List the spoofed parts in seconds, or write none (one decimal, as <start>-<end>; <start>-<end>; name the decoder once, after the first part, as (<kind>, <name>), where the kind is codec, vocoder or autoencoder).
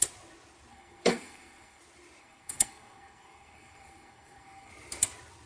0.7-1.8 (codec, SNAC); 2.2-4.7